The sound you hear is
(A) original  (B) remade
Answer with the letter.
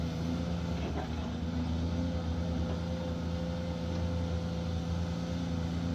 A